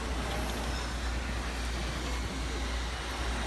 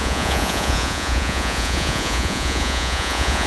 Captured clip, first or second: first